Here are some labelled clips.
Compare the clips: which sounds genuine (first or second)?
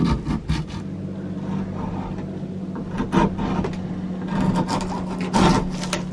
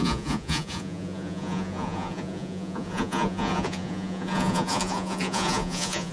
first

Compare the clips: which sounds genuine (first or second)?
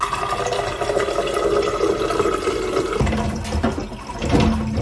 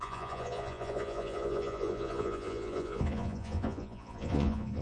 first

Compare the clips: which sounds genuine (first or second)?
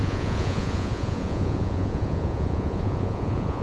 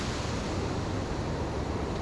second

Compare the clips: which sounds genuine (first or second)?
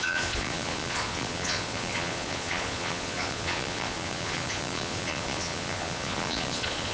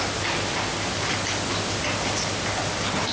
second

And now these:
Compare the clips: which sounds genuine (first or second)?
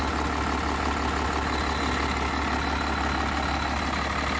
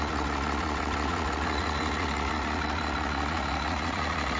first